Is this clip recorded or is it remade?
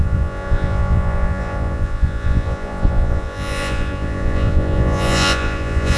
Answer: remade